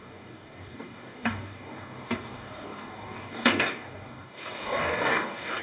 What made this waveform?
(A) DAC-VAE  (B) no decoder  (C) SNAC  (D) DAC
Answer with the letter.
D